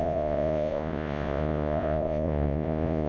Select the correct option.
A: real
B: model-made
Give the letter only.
B